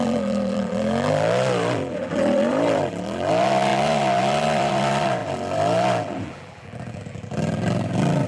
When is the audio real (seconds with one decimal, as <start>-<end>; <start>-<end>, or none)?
none